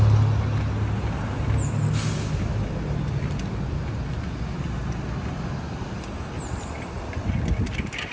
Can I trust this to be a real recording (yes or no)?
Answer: yes